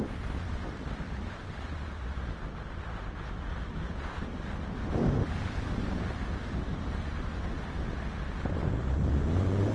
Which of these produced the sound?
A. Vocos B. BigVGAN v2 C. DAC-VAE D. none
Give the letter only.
D